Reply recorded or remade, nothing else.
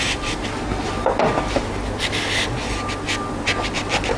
recorded